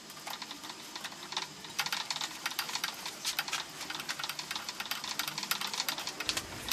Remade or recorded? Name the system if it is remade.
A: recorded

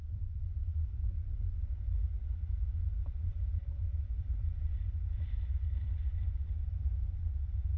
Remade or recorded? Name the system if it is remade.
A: remade, vocoder, BigVGAN v2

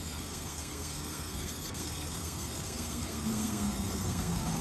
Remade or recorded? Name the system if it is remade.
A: remade, codec, SNAC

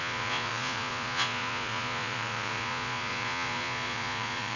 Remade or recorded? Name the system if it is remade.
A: remade, vocoder, Vocos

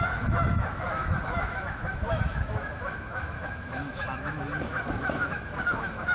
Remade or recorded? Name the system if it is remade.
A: remade, autoencoder, DAC-VAE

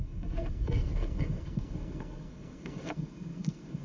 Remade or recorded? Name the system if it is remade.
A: remade, codec, SNAC